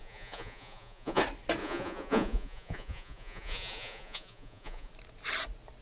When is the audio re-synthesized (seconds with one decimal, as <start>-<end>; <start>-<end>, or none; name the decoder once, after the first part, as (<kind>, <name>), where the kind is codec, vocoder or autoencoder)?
0.0-1.2 (vocoder, Vocos); 1.6-4.9